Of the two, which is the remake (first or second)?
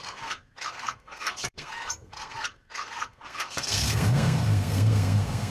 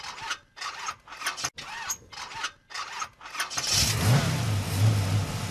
first